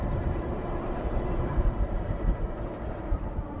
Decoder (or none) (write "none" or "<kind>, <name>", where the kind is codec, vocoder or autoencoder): vocoder, BigVGAN v2